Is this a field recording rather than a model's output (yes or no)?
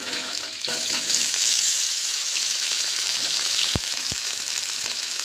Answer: no